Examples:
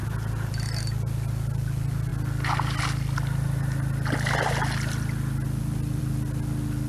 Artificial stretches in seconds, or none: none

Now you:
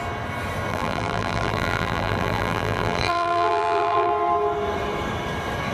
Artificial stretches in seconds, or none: 0.7-4.1 (vocoder, BigVGAN v2)

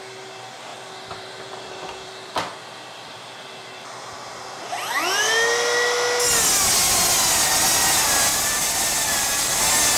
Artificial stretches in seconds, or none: 0.7-4.7 (vocoder, BigVGAN v2); 8.3-9.6

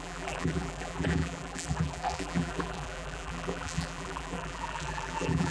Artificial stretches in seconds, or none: 0.0-5.5 (vocoder, BigVGAN v2)